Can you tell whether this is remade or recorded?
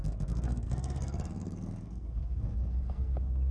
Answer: remade